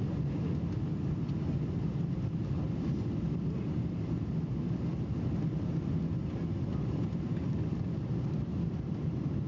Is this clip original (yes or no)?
yes